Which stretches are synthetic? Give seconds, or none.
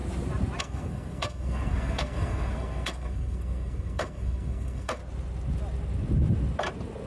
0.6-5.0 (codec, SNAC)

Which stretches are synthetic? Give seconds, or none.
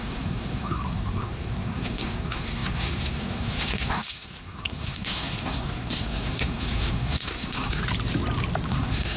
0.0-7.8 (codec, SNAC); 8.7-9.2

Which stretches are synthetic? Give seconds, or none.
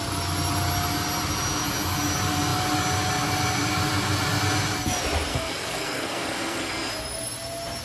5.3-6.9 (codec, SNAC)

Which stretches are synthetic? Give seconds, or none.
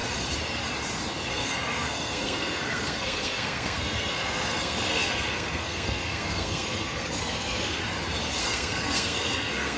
1.3-7.8 (codec, SNAC); 8.4-9.8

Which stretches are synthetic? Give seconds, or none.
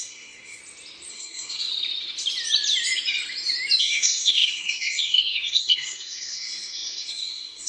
0.0-0.6 (codec, SNAC); 1.1-1.7; 3.8-7.7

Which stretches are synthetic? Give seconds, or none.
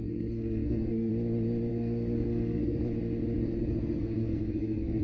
0.0-1.1 (codec, SNAC); 1.7-2.8; 3.4-5.0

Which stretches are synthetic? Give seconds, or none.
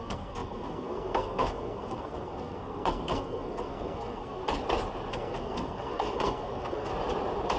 0.0-4.4 (codec, SNAC); 5.1-6.9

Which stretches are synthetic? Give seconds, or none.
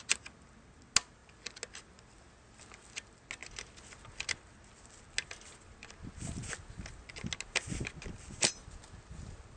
none